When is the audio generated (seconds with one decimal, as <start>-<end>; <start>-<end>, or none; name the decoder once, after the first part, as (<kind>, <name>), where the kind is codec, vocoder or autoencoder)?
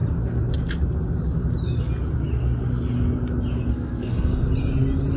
3.7-4.3 (codec, SNAC)